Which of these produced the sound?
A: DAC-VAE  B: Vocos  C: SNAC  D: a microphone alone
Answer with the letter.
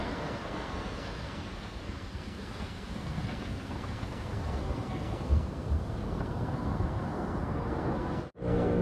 C